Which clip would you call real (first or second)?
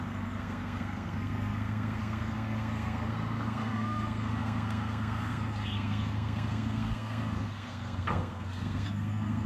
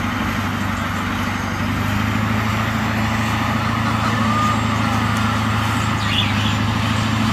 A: second